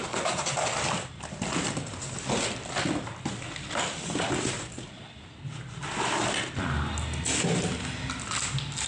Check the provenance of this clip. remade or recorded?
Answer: recorded